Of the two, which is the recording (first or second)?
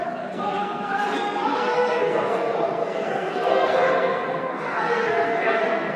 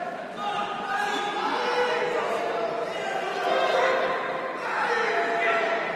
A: second